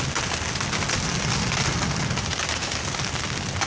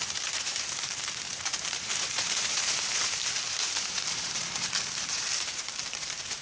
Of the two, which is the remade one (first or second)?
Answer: second